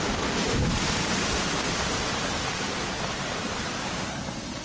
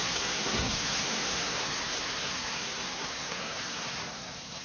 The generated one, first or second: second